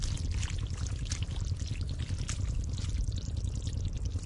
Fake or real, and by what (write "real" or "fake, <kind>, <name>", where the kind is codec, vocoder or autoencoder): real